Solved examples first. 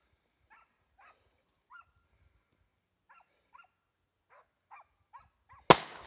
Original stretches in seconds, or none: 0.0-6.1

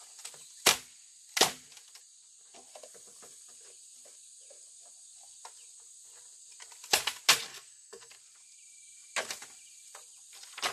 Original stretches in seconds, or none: 0.0-7.5; 8.1-10.7